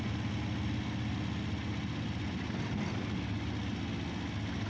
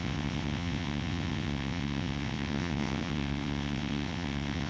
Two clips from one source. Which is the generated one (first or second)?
second